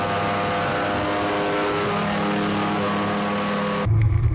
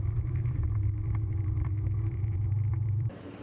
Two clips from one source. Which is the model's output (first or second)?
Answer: second